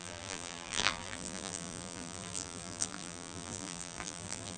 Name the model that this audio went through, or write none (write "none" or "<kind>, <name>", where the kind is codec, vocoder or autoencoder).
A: vocoder, BigVGAN v2